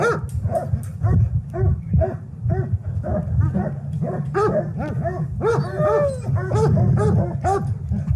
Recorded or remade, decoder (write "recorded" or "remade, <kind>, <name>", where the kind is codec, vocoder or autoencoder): recorded